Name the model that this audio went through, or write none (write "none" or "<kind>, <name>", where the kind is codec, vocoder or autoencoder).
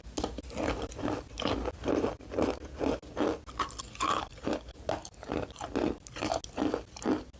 none